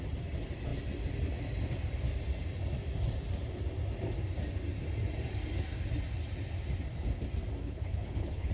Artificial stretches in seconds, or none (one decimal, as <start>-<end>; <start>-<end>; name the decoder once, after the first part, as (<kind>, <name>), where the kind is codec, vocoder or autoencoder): 7.6-8.5 (codec, HILCodec)